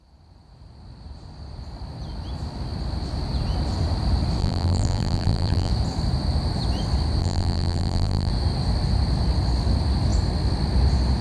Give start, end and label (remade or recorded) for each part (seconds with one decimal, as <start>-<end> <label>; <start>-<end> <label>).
0.0-4.4 recorded; 4.4-5.7 remade; 5.7-7.2 recorded; 7.2-8.3 remade; 8.3-11.2 recorded